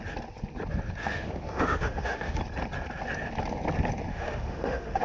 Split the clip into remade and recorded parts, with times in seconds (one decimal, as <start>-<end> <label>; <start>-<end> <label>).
0.0-1.0 recorded; 1.0-2.4 remade; 2.4-4.1 recorded; 4.1-5.0 remade